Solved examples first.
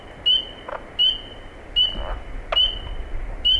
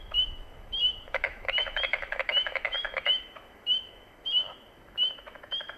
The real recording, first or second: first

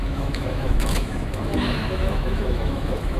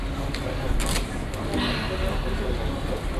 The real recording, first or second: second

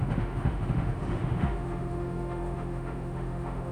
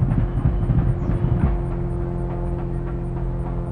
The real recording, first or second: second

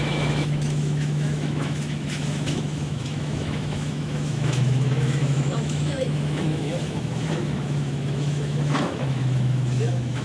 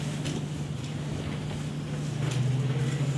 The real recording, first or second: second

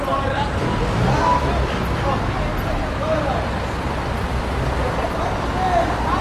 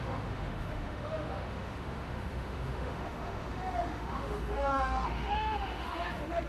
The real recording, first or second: first